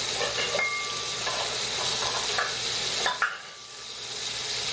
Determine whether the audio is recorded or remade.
recorded